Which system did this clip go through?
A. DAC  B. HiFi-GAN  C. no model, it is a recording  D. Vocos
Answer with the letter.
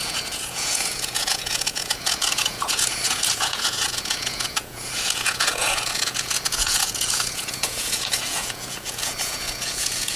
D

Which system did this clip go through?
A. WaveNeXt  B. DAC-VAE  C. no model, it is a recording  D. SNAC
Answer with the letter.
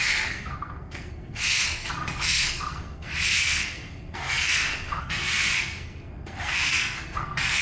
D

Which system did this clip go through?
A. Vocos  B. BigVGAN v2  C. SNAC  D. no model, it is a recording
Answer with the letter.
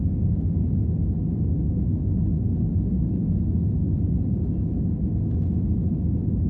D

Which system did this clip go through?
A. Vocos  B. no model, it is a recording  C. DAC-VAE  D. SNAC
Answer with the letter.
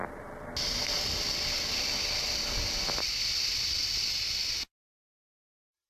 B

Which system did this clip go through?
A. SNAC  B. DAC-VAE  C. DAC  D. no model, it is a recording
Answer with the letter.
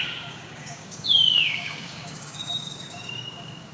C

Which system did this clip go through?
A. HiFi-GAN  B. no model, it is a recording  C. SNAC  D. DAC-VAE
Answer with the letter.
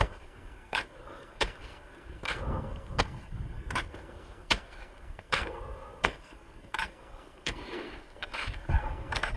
C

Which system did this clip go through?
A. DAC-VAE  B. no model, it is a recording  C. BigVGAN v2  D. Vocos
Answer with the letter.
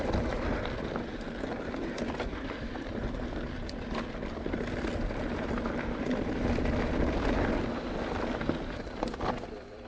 B